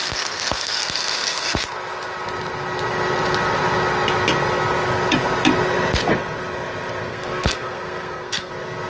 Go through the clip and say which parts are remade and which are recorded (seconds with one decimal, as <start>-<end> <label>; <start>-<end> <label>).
0.0-1.7 remade; 1.7-7.1 recorded; 7.1-8.5 remade; 8.5-8.9 recorded